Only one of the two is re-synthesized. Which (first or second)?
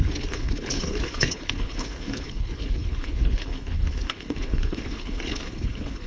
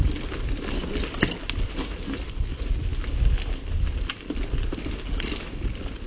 first